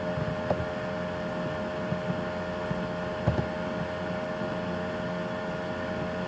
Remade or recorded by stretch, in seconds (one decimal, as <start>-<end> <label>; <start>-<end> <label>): 0.0-6.3 recorded